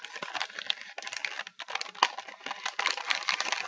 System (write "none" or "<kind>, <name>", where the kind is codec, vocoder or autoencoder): none